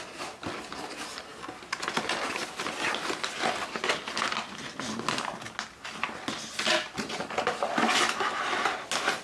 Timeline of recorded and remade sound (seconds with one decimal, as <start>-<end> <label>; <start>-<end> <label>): 0.0-9.2 recorded